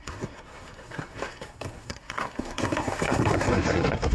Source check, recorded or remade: remade